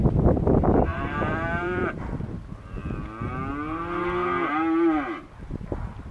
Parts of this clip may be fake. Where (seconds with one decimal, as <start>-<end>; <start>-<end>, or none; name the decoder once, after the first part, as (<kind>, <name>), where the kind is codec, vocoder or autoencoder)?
0.0-0.5 (vocoder, BigVGAN v2); 0.9-1.9